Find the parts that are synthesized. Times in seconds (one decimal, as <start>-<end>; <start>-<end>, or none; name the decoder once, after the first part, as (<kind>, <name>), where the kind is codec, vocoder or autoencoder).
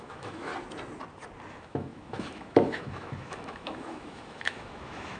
0.0-0.5 (autoencoder, DAC-VAE); 1.5-5.2